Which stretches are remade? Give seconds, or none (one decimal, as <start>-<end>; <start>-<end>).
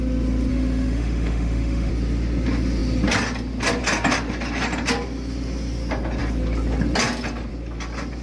0.5-1.9